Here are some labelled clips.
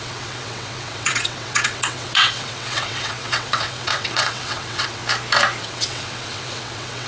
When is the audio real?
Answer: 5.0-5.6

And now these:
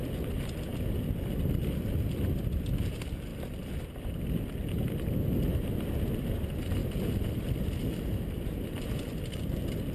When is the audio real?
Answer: 0.0-9.9

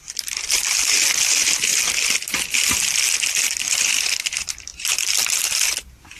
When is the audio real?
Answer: 0.0-6.2